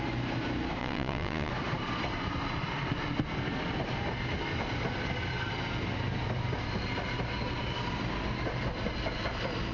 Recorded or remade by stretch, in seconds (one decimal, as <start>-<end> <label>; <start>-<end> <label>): 0.0-0.8 recorded; 0.8-1.5 remade; 1.5-9.7 recorded